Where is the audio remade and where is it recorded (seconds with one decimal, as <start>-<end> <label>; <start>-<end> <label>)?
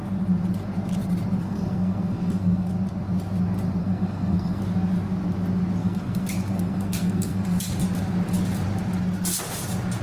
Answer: 0.0-1.4 recorded; 1.4-2.7 remade; 2.7-3.8 recorded; 3.8-4.6 remade; 4.6-5.8 recorded; 5.8-7.7 remade; 7.7-10.0 recorded